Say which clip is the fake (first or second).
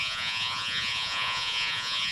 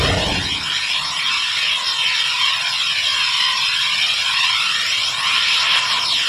first